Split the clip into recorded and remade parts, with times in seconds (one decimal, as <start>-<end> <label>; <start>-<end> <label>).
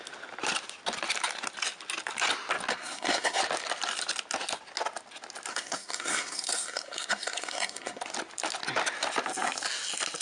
0.0-2.7 recorded; 2.7-3.4 remade; 3.4-5.5 recorded; 5.5-8.0 remade; 8.0-10.2 recorded